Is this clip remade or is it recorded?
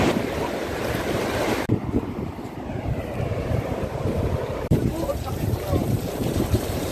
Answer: remade